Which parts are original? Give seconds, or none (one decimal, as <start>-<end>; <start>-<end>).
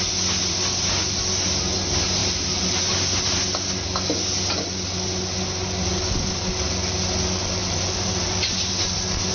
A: 0.0-2.2; 2.8-9.3